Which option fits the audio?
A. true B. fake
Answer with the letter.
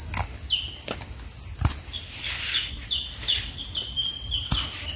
A